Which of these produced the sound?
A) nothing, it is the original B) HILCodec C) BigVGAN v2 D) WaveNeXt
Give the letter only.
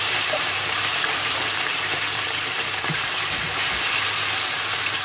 C